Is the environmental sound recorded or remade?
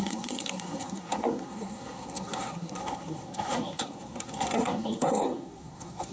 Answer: remade